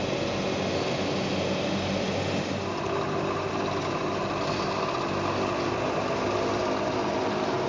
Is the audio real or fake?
real